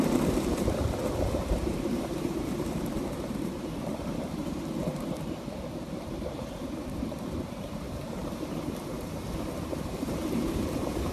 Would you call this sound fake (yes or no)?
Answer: yes